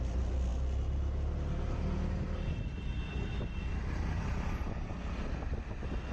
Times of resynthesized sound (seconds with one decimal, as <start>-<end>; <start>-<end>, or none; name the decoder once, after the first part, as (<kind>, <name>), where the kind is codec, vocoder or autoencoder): none